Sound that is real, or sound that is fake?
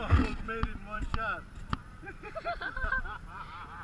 fake